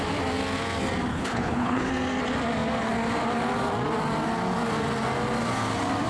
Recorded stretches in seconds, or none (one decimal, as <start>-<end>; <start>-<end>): 0.0-1.1; 1.9-6.1